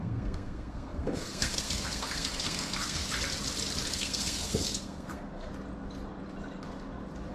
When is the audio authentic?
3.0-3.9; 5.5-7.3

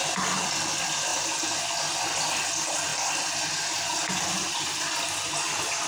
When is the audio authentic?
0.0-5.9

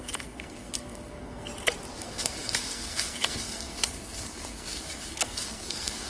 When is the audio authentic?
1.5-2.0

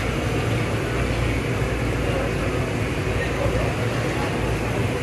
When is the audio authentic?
0.0-5.0

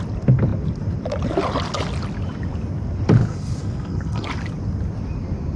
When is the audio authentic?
0.0-3.3; 4.3-5.6

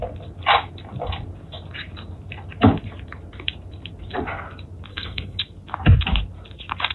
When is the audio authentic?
0.0-4.9; 5.4-6.9

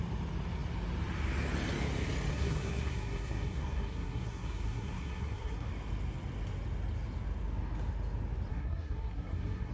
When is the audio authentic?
0.0-2.3; 5.7-8.5

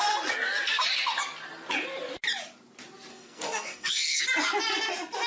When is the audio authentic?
0.0-3.1; 4.2-5.3